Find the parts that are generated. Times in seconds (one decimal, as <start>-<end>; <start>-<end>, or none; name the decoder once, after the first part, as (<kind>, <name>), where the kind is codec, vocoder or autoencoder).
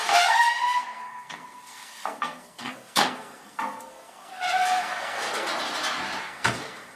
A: 0.0-5.5 (codec, SNAC); 6.2-7.0